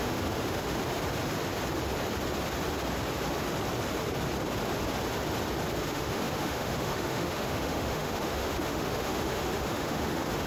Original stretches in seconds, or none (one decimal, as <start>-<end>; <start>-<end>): 0.8-5.8